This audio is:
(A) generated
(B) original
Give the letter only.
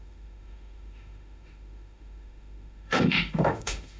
A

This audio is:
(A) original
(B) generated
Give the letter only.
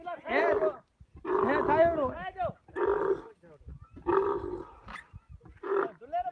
A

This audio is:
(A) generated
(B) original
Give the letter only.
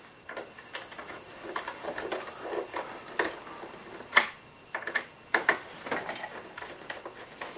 B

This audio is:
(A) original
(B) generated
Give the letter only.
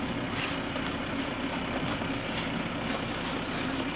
A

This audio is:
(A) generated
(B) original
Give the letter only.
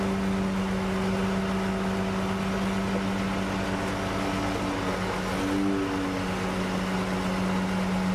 B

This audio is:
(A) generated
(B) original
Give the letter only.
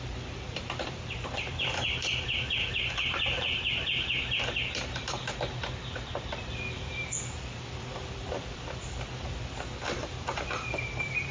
A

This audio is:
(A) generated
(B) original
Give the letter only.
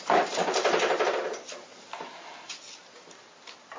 B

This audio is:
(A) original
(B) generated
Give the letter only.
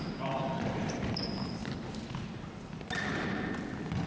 A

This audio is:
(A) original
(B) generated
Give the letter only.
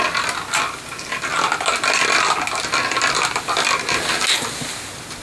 A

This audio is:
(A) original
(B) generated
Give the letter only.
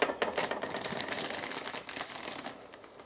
A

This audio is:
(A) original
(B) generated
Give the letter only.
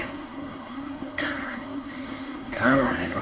B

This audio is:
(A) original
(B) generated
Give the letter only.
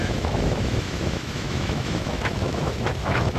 B